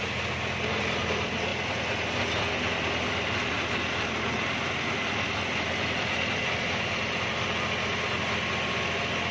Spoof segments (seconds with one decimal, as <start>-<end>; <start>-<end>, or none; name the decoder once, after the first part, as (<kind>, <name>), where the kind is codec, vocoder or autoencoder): none